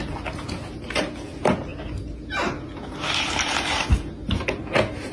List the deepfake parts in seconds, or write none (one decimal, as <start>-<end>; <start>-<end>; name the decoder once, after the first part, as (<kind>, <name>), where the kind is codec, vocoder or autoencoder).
none